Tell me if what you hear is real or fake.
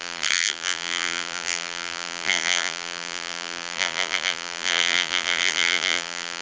fake